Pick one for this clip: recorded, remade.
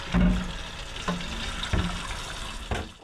recorded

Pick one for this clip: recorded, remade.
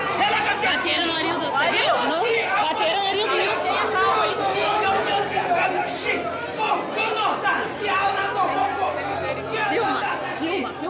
recorded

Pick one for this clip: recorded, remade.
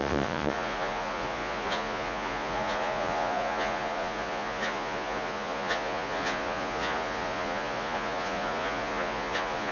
remade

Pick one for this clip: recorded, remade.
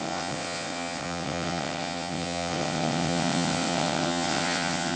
remade